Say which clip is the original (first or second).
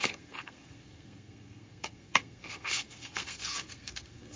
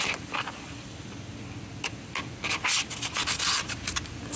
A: second